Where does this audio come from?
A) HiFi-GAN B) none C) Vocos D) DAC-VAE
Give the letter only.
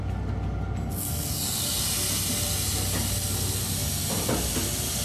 B